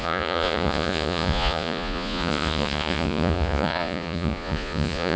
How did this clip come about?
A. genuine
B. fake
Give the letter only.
B